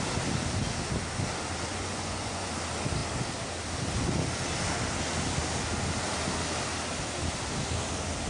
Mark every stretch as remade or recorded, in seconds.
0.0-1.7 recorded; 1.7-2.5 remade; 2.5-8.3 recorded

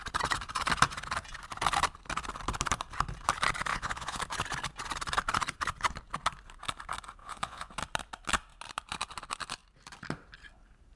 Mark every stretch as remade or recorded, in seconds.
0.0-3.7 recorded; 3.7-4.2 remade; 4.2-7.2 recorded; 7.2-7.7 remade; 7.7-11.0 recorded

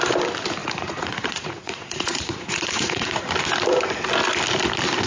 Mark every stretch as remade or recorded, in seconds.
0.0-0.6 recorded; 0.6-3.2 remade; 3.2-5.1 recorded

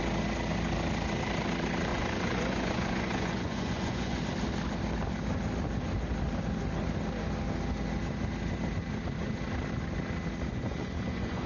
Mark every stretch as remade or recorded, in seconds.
0.0-1.9 recorded; 1.9-4.2 remade; 4.2-10.5 recorded; 10.5-11.5 remade

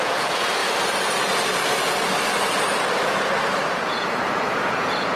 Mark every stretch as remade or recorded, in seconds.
0.0-0.6 remade; 0.6-3.7 recorded; 3.7-5.2 remade

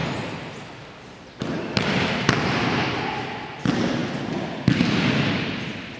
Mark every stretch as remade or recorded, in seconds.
0.0-6.0 recorded

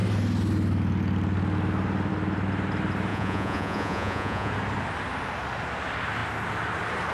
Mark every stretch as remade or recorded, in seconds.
0.0-3.1 recorded; 3.1-4.5 remade; 4.5-7.1 recorded